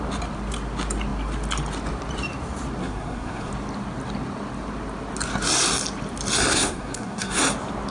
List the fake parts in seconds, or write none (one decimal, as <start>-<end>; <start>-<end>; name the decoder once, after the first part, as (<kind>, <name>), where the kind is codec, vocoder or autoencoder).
2.8-3.5 (codec, SNAC); 6.5-7.4